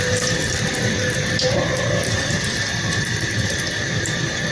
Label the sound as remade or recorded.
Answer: remade